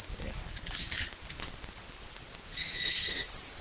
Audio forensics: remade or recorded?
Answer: recorded